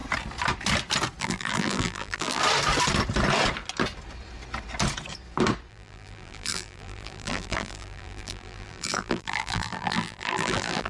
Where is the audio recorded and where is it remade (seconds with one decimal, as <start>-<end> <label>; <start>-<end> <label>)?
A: 0.0-1.2 recorded; 1.2-2.4 remade; 2.4-5.7 recorded; 5.7-10.9 remade